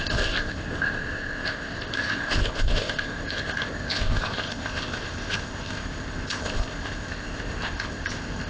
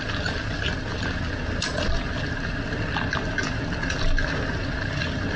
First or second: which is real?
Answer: second